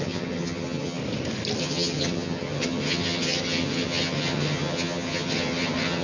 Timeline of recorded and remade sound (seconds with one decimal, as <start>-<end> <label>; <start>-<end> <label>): 0.0-1.0 remade; 1.0-1.6 recorded; 1.6-6.0 remade

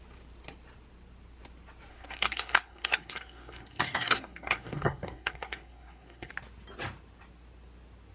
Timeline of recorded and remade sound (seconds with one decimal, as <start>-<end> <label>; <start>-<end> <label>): 0.0-1.9 recorded; 1.9-6.3 remade; 6.3-8.1 recorded

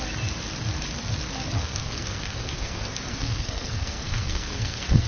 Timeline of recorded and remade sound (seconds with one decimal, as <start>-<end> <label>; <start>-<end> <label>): 0.0-1.6 recorded; 1.6-5.1 remade

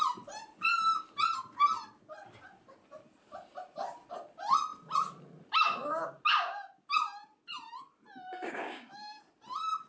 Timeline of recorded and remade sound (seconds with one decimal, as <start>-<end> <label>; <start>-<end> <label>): 0.0-8.3 recorded; 8.3-9.2 remade; 9.2-9.9 recorded

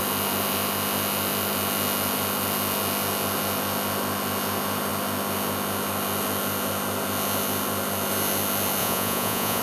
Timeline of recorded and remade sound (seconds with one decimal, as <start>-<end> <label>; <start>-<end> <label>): 0.0-8.8 recorded; 8.8-9.6 remade

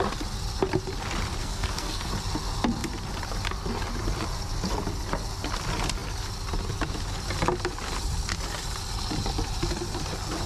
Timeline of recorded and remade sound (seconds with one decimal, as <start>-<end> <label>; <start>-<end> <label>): 0.0-1.4 recorded; 1.4-2.1 remade; 2.1-10.5 recorded

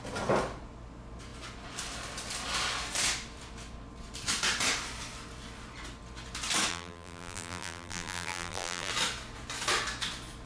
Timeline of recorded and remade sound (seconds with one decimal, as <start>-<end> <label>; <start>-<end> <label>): 0.0-6.7 recorded; 6.7-8.9 remade; 8.9-10.5 recorded

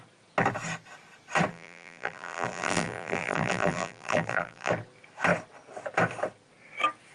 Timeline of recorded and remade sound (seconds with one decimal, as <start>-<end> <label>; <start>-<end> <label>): 0.0-1.5 recorded; 1.5-4.7 remade; 4.7-7.1 recorded